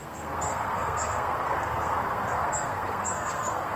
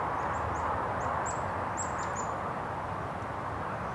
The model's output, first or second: first